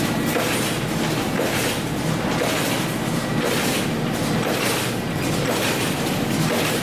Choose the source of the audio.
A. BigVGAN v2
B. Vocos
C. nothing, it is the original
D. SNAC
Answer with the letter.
C